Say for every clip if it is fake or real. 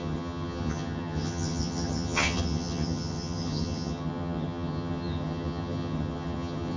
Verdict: fake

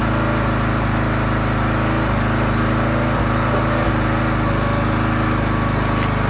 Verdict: real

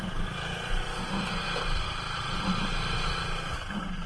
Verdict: real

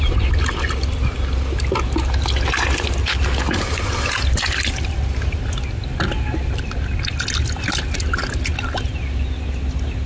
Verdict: real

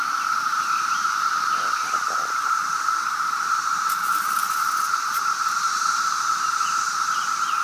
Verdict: fake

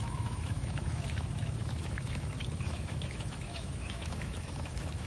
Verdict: fake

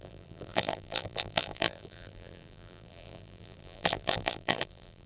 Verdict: fake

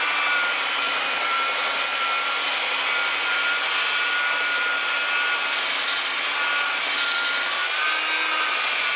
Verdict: real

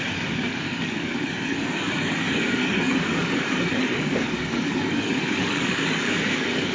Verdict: fake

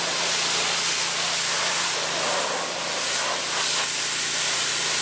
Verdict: real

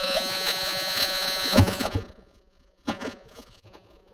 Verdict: fake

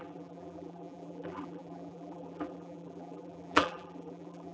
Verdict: fake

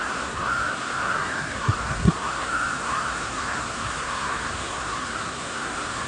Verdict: fake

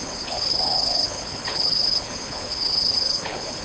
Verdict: fake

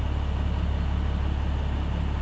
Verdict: real